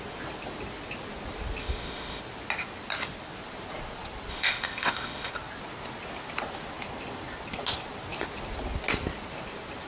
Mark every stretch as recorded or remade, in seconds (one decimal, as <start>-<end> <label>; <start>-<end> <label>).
0.0-1.6 recorded; 1.6-2.2 remade; 2.2-4.3 recorded; 4.3-5.3 remade; 5.3-9.9 recorded